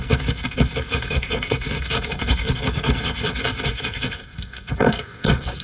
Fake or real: fake